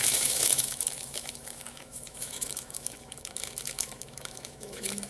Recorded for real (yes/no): no